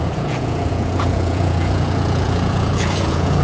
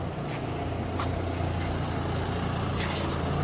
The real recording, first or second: second